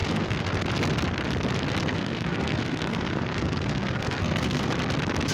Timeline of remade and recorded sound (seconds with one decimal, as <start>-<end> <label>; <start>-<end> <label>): 0.0-0.6 remade; 0.6-1.8 recorded; 1.8-4.7 remade; 4.7-5.3 recorded